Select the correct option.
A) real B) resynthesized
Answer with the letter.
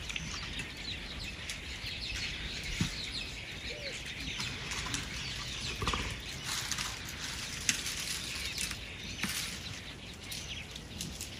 A